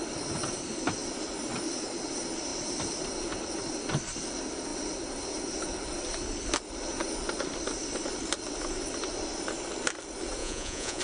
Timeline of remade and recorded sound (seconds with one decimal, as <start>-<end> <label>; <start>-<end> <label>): 0.0-10.4 recorded; 10.4-11.0 remade